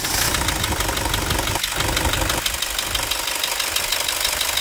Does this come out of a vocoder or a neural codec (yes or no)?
no